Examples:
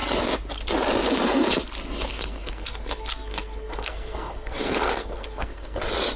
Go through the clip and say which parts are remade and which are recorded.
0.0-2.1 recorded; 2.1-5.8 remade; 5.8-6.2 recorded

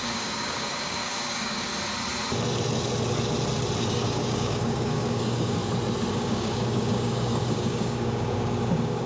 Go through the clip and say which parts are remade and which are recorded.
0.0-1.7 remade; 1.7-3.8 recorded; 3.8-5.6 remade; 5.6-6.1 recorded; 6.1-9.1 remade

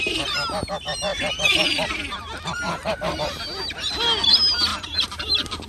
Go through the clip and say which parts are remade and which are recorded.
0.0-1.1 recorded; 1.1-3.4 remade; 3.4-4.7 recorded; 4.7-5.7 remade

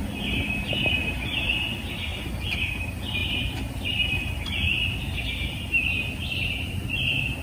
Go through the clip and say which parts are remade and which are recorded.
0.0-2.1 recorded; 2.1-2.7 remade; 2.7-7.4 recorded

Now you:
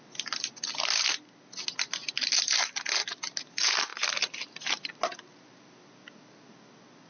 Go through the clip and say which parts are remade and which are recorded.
0.0-7.1 recorded

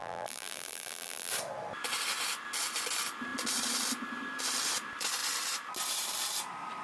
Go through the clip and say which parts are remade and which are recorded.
0.0-1.3 remade; 1.3-6.8 recorded

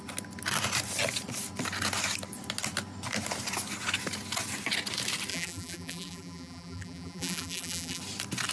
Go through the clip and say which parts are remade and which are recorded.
0.0-5.3 recorded; 5.3-8.0 remade; 8.0-8.5 recorded

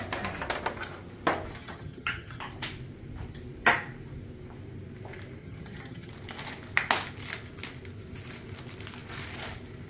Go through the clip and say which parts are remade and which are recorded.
0.0-1.6 recorded; 1.6-2.4 remade; 2.4-5.4 recorded; 5.4-6.1 remade; 6.1-9.9 recorded